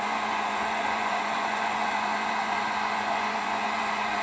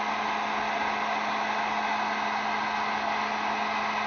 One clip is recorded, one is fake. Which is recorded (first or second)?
second